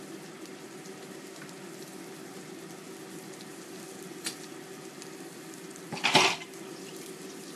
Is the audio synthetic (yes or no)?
no